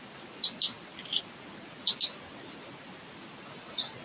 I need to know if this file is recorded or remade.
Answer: recorded